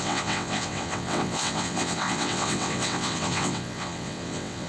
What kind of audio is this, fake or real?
fake